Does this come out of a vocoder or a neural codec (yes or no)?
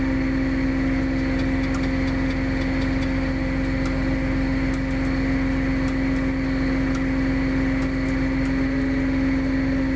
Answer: no